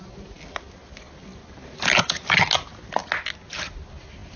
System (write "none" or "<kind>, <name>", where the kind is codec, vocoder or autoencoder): none